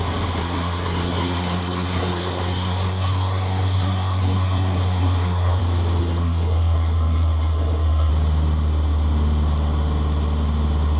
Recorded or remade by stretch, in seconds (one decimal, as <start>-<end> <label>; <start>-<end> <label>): 0.0-0.4 recorded; 0.4-5.6 remade; 5.6-6.0 recorded; 6.0-8.1 remade; 8.1-11.0 recorded